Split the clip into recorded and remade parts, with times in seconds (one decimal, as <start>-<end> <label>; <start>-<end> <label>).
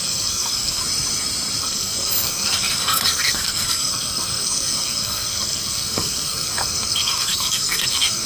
0.0-0.8 remade; 0.8-1.6 recorded; 1.6-8.3 remade